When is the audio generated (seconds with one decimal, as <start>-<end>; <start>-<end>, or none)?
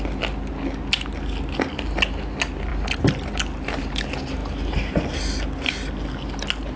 none